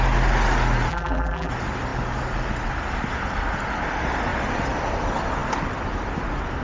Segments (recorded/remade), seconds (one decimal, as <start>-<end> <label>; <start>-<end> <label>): 0.0-0.9 recorded; 0.9-1.5 remade; 1.5-6.6 recorded